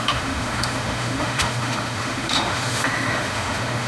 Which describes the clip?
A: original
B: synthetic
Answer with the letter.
B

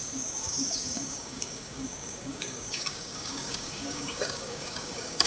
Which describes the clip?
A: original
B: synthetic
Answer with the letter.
B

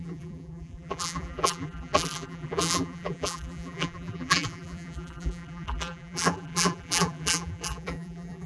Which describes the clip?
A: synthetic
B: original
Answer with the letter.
A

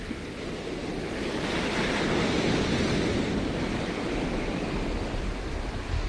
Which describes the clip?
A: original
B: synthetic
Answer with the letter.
A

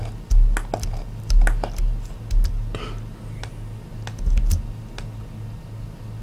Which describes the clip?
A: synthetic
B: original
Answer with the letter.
B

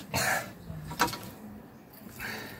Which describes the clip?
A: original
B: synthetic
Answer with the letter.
A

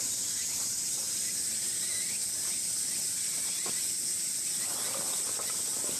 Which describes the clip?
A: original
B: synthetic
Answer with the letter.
A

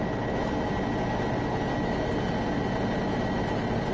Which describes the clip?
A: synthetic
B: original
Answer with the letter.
B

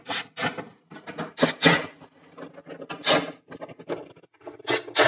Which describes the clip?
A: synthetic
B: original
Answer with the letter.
B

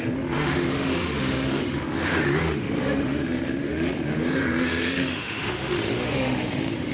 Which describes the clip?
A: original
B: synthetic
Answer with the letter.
B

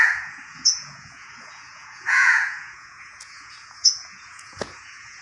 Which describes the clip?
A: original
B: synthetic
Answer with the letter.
B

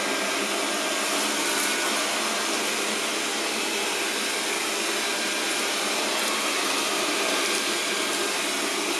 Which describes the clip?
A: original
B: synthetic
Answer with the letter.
A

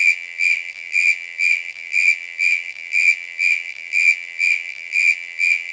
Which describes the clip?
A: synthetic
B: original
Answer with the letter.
A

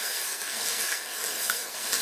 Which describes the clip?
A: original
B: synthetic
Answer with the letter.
B